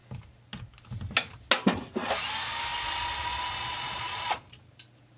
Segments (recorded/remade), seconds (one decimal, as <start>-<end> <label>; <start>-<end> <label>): 0.0-2.7 recorded; 2.7-4.6 remade; 4.6-5.2 recorded